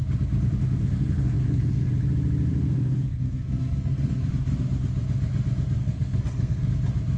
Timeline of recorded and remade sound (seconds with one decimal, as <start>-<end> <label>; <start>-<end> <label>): 0.0-0.8 recorded; 0.8-1.9 remade; 1.9-2.5 recorded; 2.5-4.3 remade; 4.3-5.8 recorded; 5.8-6.7 remade; 6.7-7.2 recorded